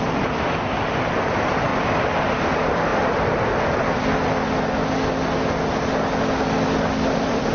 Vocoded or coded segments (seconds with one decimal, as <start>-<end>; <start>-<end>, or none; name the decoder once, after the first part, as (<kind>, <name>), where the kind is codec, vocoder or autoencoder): 0.0-1.7 (vocoder, BigVGAN v2); 2.3-2.9; 7.1-7.5